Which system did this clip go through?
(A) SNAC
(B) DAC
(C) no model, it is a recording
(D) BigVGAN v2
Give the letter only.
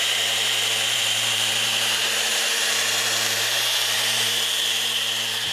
D